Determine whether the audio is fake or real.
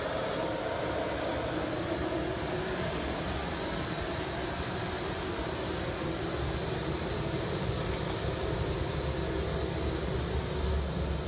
real